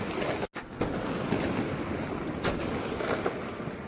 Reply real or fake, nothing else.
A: real